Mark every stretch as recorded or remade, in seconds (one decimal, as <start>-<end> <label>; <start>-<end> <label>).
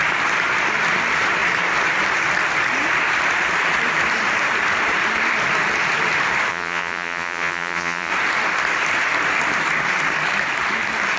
0.0-6.5 recorded; 6.5-8.1 remade; 8.1-11.2 recorded